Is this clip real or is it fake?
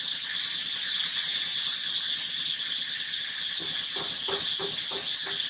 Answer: real